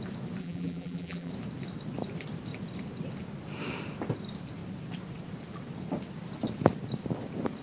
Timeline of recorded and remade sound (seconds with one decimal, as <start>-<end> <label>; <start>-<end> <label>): 0.0-0.4 recorded; 0.4-1.3 remade; 1.3-7.6 recorded